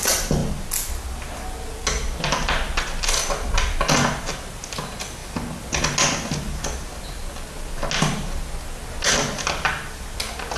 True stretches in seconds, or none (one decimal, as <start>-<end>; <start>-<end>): 0.0-10.6